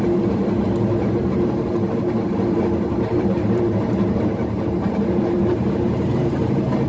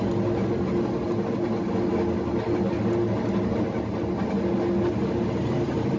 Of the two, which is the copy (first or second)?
first